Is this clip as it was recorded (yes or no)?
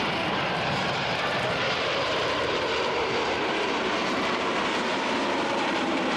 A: no